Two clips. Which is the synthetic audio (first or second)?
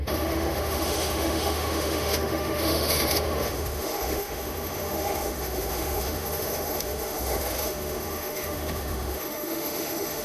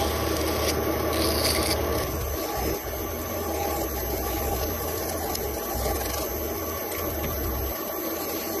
first